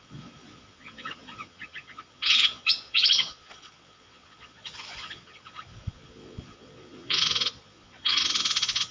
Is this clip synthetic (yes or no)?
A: yes